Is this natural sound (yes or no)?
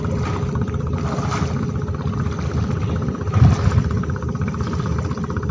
yes